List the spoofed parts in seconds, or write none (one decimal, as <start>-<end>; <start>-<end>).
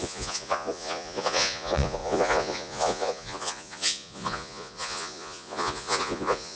0.0-6.6